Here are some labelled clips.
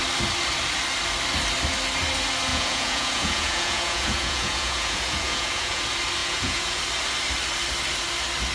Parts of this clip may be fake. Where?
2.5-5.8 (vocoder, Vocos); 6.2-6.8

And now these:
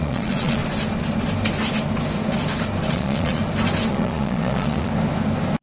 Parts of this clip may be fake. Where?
0.0-0.6 (vocoder, Vocos); 2.9-3.4; 3.9-4.9

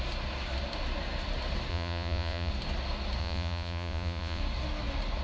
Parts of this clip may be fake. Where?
1.7-2.5 (vocoder, Vocos); 3.2-4.4

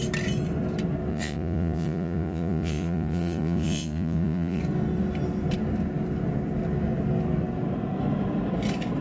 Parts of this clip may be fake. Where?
1.1-4.6 (vocoder, Vocos)